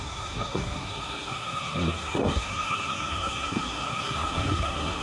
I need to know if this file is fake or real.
fake